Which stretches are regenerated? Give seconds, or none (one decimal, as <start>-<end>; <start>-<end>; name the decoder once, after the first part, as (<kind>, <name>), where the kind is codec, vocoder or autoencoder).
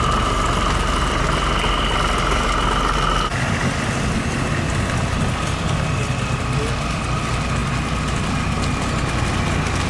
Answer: none